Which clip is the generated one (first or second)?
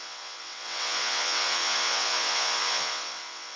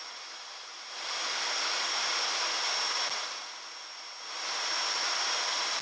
first